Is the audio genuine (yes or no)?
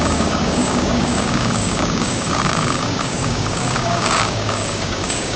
no